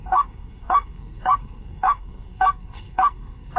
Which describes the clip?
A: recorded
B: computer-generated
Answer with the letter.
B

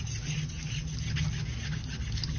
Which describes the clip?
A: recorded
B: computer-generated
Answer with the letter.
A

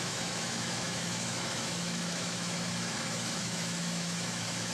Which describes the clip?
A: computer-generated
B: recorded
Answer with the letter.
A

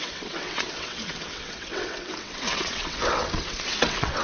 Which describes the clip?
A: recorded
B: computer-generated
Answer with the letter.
B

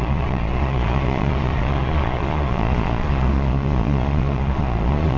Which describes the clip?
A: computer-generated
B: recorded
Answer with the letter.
A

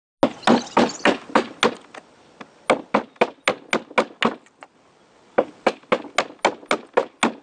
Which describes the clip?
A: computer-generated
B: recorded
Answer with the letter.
B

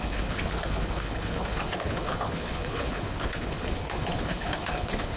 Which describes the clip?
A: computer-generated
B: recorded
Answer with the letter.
A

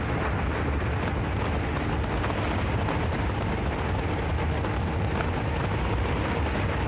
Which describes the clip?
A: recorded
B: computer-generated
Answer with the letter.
A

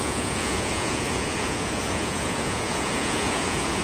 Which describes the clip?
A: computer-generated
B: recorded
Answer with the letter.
A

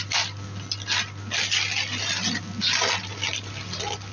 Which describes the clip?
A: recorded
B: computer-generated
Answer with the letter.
A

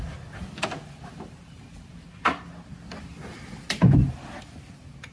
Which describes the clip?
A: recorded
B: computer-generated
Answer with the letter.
A